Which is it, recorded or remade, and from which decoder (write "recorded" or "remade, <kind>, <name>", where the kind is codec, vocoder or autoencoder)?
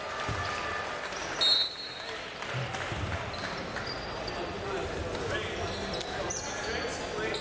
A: recorded